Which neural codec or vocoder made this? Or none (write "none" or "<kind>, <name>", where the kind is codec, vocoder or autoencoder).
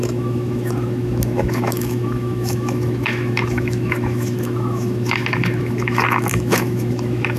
autoencoder, DAC-VAE